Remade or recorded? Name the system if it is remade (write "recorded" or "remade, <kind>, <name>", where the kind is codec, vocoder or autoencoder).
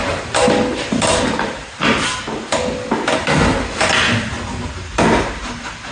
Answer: recorded